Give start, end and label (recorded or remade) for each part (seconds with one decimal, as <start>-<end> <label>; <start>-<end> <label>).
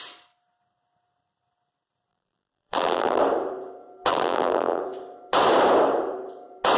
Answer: 0.0-2.1 recorded; 2.1-3.2 remade; 3.2-4.1 recorded; 4.1-4.8 remade; 4.8-6.8 recorded